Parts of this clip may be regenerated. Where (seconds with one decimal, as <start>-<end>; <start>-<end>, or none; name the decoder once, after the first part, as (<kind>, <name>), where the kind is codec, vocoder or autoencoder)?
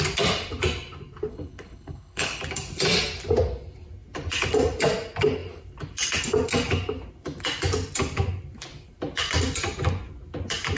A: 1.3-2.4 (codec, HILCodec)